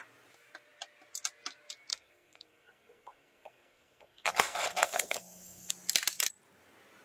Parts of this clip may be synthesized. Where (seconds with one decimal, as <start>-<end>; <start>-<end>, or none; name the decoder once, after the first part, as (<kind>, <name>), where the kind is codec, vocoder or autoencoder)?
1.9-5.7 (codec, SNAC)